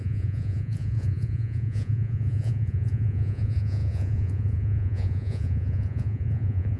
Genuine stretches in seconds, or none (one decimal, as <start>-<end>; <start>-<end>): none